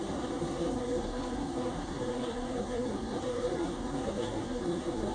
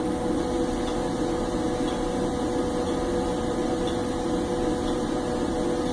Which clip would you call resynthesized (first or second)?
first